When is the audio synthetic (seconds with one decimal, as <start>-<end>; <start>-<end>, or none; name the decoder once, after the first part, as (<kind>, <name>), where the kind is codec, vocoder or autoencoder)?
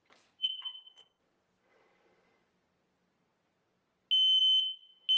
0.4-1.2 (codec, HILCodec)